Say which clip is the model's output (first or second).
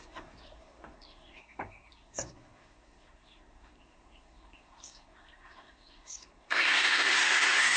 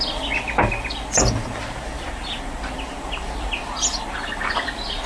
first